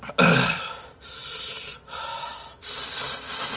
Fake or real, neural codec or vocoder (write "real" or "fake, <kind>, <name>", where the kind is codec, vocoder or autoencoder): real